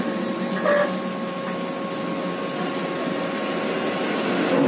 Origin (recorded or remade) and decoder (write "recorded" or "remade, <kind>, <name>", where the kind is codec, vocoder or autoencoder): recorded